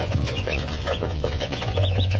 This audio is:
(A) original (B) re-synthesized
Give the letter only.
B